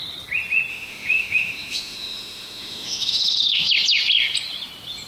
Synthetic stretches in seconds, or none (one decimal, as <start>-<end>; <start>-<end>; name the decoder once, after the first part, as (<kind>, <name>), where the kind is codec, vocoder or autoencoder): 0.7-3.7 (autoencoder, DAC-VAE)